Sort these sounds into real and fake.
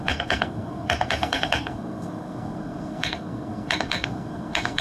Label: fake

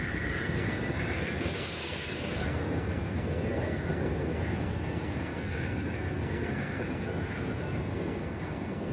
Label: fake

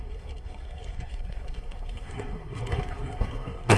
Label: fake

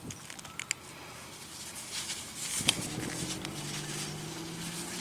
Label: real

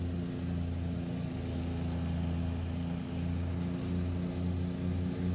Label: real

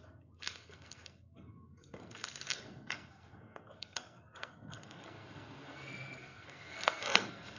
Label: fake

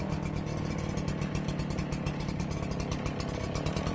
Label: real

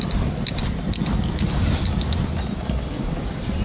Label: real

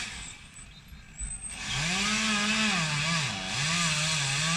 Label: real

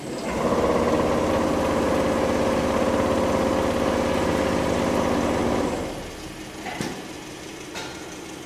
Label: real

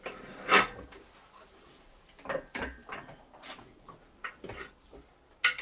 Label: real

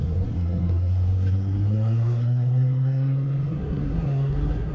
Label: fake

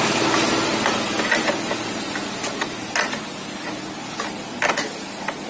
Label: real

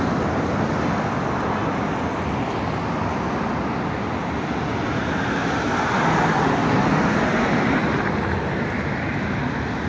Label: real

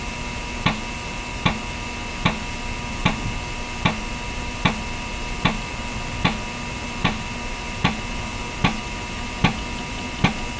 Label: real